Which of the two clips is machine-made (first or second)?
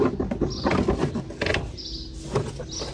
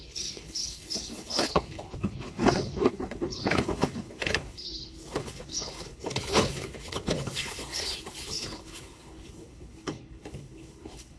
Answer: second